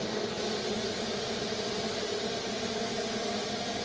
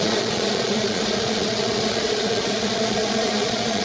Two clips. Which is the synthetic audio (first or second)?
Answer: second